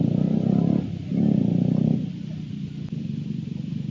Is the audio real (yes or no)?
yes